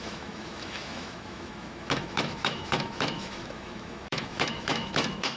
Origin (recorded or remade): remade